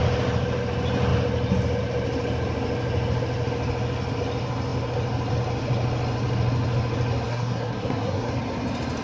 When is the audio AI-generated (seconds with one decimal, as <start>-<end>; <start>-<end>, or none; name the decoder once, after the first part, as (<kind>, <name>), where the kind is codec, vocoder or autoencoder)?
7.3-8.3 (codec, SNAC)